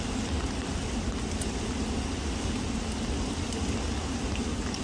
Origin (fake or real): real